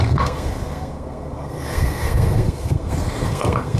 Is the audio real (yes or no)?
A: no